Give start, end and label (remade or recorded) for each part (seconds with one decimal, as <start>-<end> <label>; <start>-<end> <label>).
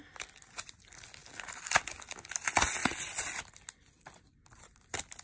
0.0-5.2 recorded